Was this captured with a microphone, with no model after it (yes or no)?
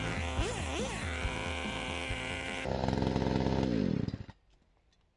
yes